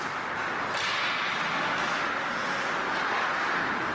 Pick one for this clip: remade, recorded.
recorded